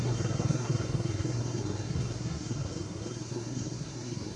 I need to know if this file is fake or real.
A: fake